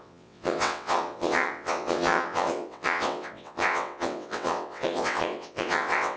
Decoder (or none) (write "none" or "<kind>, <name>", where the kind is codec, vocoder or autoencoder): vocoder, WaveNeXt